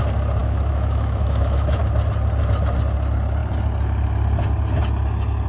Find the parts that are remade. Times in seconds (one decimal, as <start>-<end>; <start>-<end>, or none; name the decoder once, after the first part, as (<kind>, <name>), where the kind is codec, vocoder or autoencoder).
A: 0.4-1.8 (autoencoder, DAC-VAE)